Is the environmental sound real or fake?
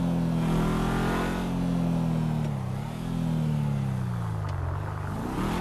real